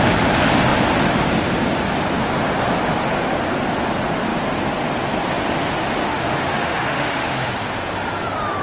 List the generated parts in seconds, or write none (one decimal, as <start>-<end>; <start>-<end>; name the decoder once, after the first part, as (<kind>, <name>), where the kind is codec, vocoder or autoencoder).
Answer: 6.0-7.5 (autoencoder, DAC-VAE)